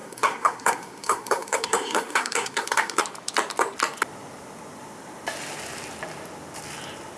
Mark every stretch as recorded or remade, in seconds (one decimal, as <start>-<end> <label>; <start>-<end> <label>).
0.0-3.0 remade; 3.0-7.2 recorded